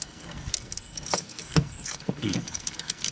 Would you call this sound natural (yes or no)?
no